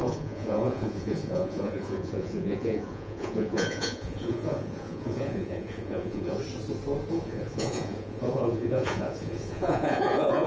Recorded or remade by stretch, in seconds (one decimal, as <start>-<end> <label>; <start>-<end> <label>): 0.0-6.4 remade; 6.4-7.1 recorded; 7.1-10.5 remade